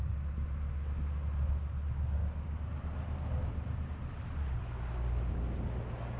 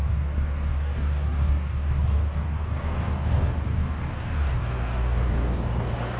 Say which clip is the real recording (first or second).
first